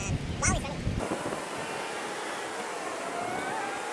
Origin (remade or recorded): recorded